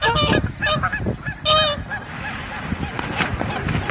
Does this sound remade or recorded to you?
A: recorded